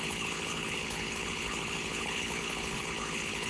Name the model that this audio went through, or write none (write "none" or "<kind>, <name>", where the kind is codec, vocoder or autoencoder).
codec, HILCodec